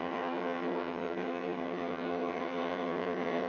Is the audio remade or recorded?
remade